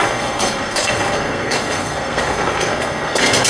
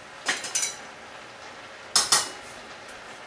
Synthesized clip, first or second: first